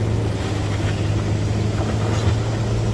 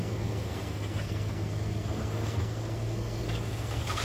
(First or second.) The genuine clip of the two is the first